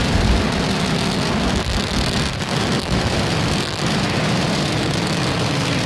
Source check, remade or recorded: recorded